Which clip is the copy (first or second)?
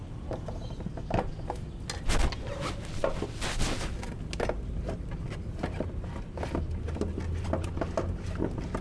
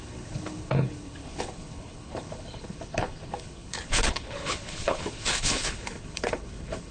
second